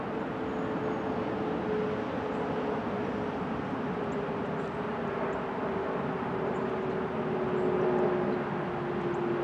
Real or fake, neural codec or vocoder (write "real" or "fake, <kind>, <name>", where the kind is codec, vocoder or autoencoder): real